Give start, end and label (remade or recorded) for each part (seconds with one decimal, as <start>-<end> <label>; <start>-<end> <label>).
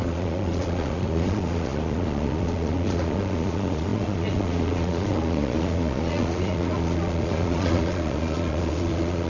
0.0-9.3 remade